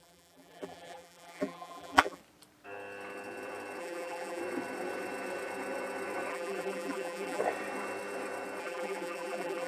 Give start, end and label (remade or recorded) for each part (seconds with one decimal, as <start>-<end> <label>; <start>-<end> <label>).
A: 0.0-2.2 remade; 2.2-3.8 recorded; 3.8-4.4 remade; 4.4-6.3 recorded; 6.3-7.4 remade; 7.4-8.6 recorded; 8.6-9.7 remade